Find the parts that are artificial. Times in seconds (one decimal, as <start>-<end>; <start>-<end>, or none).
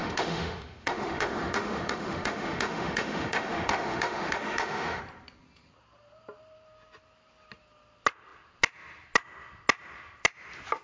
0.0-5.0